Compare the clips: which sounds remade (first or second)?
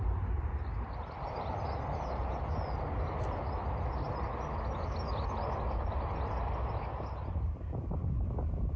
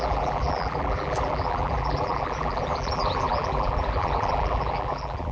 second